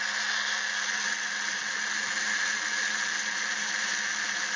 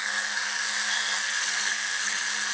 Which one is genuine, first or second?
first